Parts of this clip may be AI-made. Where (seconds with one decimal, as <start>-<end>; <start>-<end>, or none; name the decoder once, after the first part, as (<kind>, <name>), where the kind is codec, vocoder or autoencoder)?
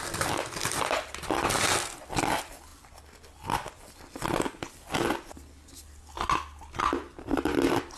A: none